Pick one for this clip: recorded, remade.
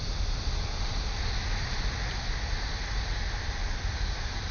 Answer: recorded